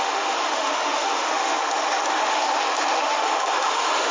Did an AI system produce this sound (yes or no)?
yes